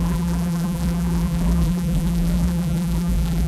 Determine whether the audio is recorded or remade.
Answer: remade